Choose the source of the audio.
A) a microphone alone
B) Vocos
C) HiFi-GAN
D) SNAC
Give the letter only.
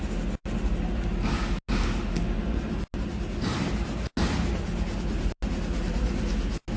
A